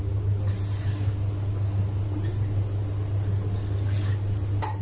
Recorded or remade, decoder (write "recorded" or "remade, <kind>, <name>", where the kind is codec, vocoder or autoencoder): recorded